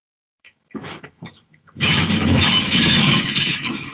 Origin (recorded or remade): remade